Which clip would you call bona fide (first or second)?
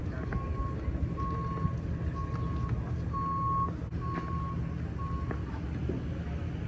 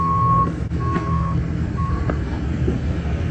first